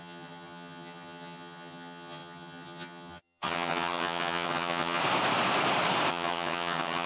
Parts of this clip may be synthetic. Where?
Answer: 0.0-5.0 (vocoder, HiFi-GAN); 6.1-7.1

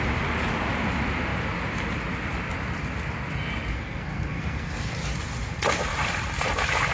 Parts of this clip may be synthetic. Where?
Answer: 3.7-4.9 (codec, SNAC)

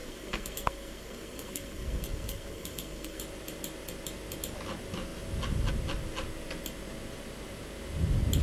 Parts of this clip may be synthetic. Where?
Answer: 0.0-3.2 (codec, SNAC)

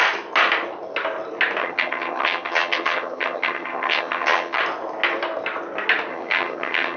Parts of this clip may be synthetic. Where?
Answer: 1.6-4.6 (vocoder, HiFi-GAN); 6.1-7.0